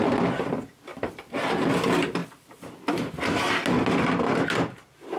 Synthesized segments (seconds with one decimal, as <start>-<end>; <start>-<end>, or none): 0.9-1.7; 2.2-3.1